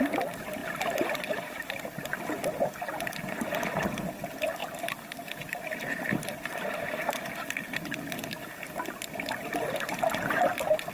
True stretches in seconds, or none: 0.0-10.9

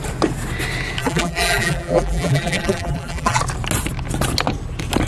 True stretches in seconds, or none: 0.0-1.0; 3.4-5.1

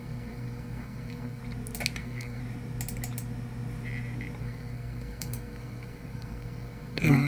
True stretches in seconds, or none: 1.4-2.0; 2.4-4.4

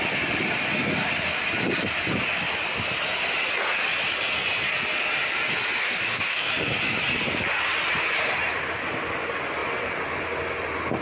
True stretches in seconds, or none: 0.0-5.8; 6.5-11.0

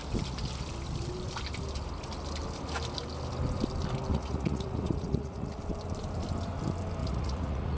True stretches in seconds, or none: 0.0-4.1; 5.6-7.0